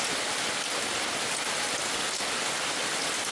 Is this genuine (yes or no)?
yes